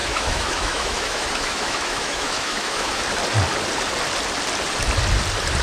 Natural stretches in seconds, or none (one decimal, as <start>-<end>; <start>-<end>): 3.0-5.6